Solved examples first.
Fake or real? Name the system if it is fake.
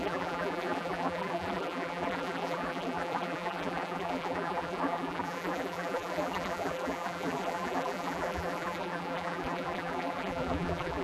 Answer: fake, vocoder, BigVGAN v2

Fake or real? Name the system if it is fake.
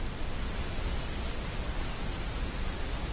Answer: real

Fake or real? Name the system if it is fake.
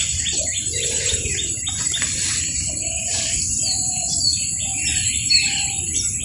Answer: fake, vocoder, BigVGAN v2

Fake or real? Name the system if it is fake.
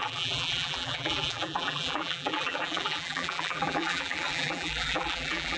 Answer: fake, vocoder, BigVGAN v2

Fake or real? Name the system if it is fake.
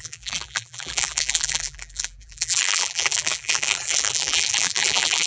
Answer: fake, vocoder, BigVGAN v2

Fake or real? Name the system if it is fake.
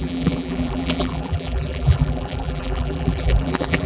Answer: fake, vocoder, BigVGAN v2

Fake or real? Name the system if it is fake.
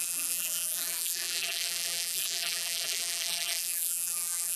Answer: fake, vocoder, BigVGAN v2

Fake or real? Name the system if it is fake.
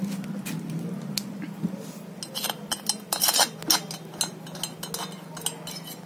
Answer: real